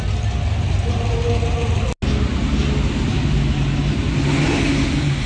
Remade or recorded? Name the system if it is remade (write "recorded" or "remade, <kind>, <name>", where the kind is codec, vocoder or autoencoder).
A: recorded